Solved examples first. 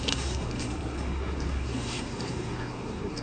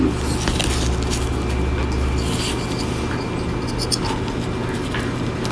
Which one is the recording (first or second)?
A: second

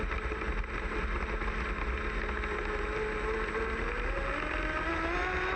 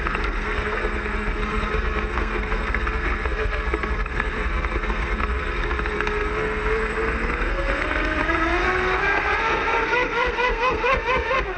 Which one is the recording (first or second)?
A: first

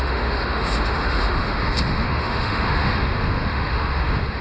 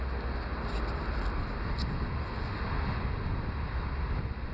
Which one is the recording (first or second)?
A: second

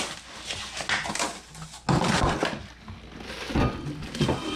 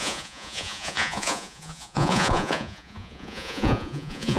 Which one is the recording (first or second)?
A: first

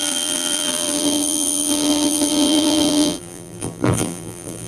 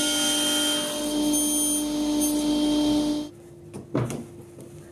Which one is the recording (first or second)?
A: second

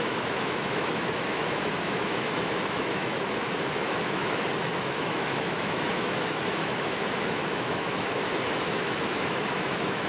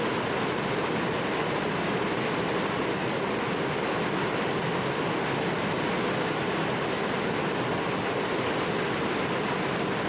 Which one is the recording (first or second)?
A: second